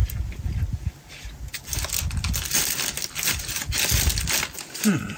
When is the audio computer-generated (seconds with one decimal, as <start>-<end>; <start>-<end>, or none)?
none